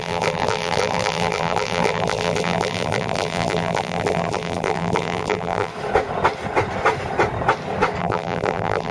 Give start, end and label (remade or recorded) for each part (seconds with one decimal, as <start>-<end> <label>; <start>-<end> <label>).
0.0-5.7 remade; 5.7-8.0 recorded; 8.0-8.9 remade